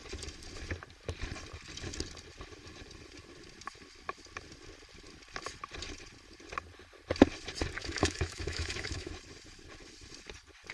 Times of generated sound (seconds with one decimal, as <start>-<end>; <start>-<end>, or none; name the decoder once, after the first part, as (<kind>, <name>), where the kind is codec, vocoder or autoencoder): 7.8-9.1 (autoencoder, DAC-VAE)